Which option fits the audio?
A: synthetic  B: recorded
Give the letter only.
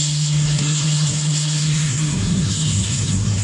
A